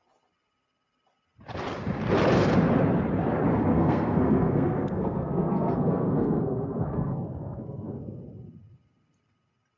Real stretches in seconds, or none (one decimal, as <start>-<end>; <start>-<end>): 0.0-3.7; 8.2-9.8